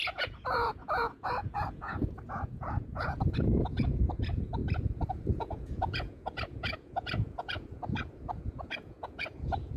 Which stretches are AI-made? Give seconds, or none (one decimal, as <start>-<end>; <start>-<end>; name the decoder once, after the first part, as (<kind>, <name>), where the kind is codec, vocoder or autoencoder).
0.0-4.6 (vocoder, Vocos); 5.1-9.8